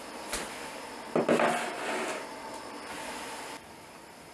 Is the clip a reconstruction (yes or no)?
no